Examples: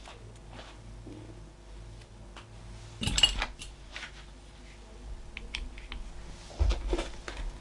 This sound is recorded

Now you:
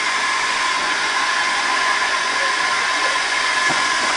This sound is remade